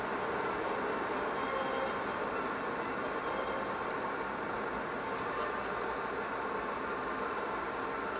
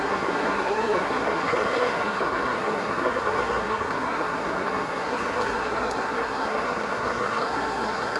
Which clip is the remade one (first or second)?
second